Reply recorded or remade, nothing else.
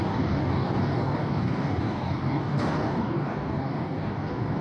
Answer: remade